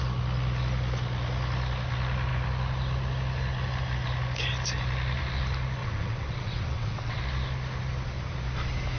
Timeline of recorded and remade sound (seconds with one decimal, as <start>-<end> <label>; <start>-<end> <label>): 0.0-5.8 recorded; 5.8-7.2 remade; 7.2-9.0 recorded